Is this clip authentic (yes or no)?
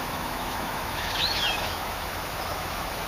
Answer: no